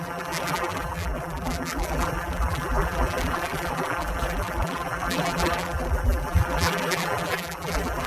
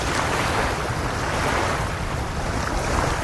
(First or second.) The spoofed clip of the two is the first